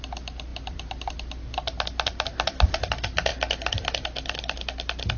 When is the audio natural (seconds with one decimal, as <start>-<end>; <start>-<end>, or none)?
0.0-5.2